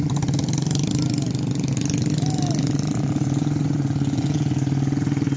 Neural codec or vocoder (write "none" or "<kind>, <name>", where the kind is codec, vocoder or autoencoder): none